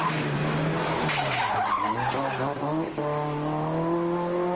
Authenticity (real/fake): real